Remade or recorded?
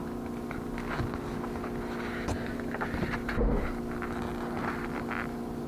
recorded